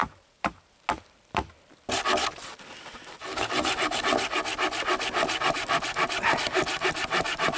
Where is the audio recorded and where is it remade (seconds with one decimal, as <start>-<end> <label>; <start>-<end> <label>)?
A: 0.0-0.7 remade; 0.7-3.3 recorded; 3.3-4.0 remade; 4.0-7.6 recorded